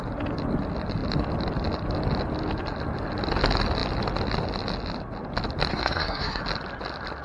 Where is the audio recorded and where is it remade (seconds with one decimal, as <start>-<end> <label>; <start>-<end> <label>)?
0.0-5.7 recorded; 5.7-6.4 remade; 6.4-7.2 recorded